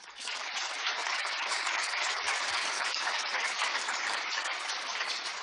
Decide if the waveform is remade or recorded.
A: remade